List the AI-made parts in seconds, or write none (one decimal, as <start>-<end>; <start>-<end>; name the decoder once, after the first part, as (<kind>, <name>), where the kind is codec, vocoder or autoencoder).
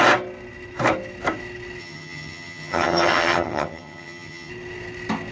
1.8-4.5 (vocoder, HiFi-GAN)